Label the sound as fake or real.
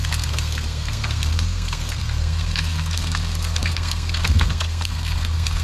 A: fake